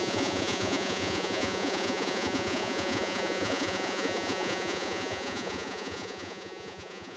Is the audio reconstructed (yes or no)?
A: yes